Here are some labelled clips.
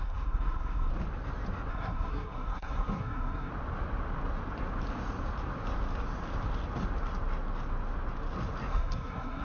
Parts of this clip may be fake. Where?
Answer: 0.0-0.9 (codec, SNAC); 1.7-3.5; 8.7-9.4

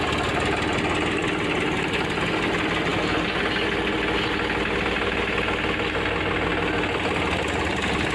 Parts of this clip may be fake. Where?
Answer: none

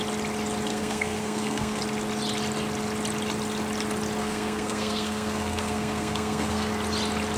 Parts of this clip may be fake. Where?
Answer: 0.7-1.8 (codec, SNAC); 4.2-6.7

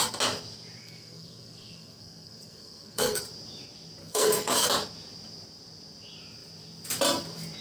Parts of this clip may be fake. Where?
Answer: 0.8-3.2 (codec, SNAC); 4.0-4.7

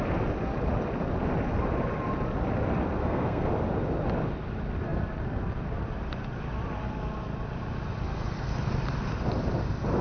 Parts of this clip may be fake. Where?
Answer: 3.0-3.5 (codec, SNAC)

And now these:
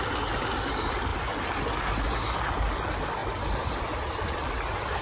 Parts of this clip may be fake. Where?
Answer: none